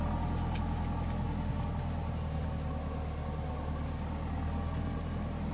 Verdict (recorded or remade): recorded